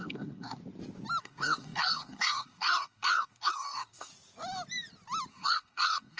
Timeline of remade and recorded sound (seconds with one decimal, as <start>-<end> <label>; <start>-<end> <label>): 0.0-0.6 remade; 0.6-1.2 recorded; 1.2-4.1 remade; 4.1-5.3 recorded; 5.3-6.2 remade